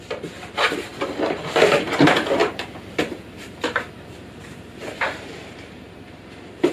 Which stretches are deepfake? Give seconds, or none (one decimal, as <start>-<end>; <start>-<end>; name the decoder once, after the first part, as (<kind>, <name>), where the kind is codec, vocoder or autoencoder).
2.4-6.7 (vocoder, BigVGAN v2)